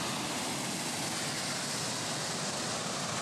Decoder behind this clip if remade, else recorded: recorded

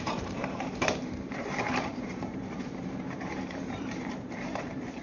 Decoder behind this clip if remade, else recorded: remade, vocoder, BigVGAN v2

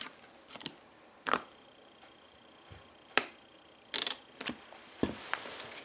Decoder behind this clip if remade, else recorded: remade, vocoder, BigVGAN v2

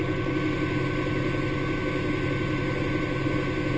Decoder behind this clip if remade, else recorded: recorded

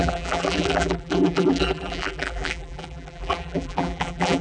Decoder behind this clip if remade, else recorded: remade, vocoder, BigVGAN v2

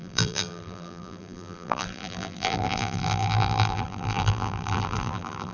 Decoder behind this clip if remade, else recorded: remade, vocoder, BigVGAN v2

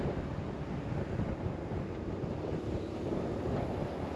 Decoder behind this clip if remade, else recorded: recorded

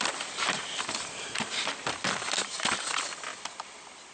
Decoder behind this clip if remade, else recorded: remade, vocoder, BigVGAN v2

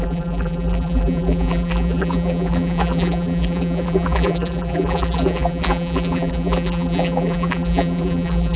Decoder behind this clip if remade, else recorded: remade, vocoder, BigVGAN v2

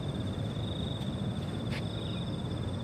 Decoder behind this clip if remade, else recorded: recorded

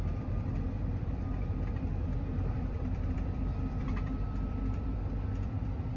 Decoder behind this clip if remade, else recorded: remade, vocoder, BigVGAN v2